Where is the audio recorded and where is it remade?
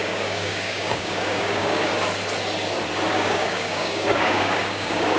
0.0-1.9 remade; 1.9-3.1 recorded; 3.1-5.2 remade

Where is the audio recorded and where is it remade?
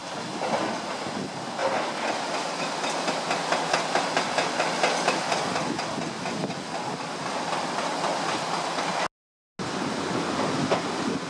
0.0-1.0 remade; 1.0-1.6 recorded; 1.6-4.5 remade; 4.5-11.3 recorded